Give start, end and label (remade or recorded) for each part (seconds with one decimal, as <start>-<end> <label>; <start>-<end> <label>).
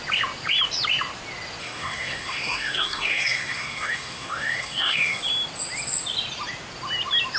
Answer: 0.0-1.6 recorded; 1.6-5.2 remade; 5.2-7.4 recorded